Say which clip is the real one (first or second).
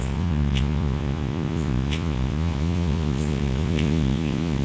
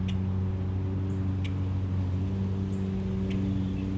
second